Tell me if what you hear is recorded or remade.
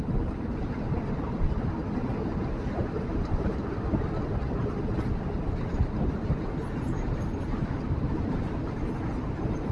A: recorded